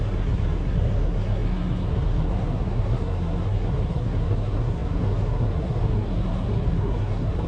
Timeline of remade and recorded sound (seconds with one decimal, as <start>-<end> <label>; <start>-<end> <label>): 0.0-7.5 remade